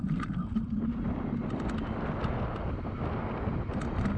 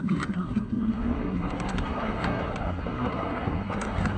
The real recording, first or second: first